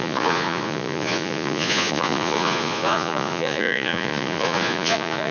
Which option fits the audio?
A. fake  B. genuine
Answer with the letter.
A